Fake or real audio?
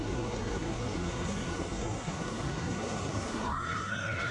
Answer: fake